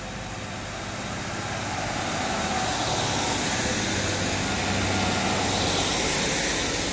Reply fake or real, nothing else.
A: real